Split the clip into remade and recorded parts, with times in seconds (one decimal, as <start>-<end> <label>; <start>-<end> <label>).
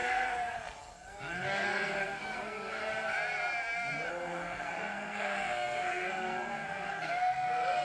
0.0-2.8 remade; 2.8-4.1 recorded; 4.1-7.8 remade